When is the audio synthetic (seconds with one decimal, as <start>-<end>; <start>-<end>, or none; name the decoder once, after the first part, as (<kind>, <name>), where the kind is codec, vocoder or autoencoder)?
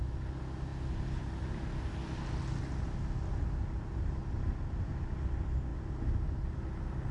none